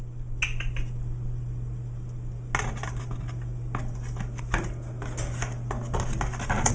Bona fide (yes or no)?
yes